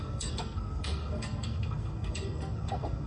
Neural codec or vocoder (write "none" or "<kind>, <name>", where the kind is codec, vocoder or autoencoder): codec, SNAC